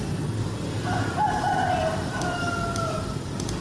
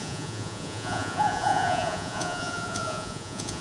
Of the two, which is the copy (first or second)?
second